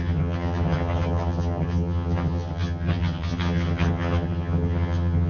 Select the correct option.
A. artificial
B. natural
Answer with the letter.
A